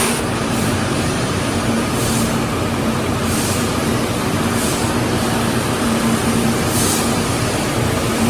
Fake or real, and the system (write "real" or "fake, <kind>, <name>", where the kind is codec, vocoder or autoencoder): fake, vocoder, BigVGAN v2